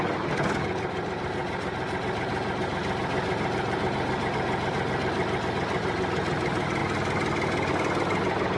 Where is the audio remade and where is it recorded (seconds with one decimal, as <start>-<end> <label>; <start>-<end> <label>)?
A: 0.0-8.6 recorded